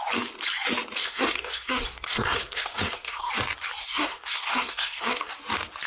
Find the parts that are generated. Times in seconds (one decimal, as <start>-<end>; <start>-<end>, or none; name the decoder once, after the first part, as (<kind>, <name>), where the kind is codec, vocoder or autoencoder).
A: 1.0-3.3 (codec, SNAC); 3.8-5.3